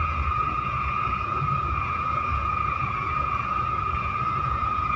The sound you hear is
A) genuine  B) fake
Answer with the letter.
B